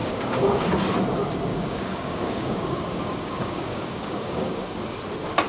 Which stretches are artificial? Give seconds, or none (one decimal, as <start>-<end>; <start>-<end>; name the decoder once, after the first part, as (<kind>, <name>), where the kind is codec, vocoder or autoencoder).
0.0-0.7 (codec, DAC); 1.5-4.8